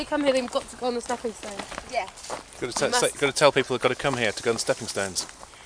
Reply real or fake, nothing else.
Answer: real